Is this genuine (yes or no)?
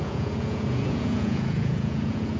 no